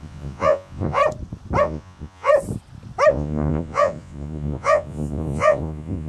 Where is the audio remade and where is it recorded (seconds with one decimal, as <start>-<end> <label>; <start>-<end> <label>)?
0.0-1.0 remade; 1.0-1.6 recorded; 1.6-2.3 remade; 2.3-3.1 recorded; 3.1-6.1 remade